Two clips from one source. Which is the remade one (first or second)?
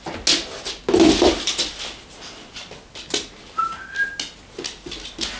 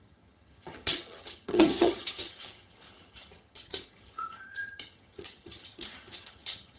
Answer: second